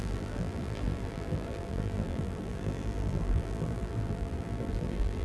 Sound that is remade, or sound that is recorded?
remade